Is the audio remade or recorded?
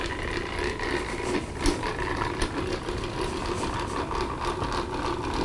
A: recorded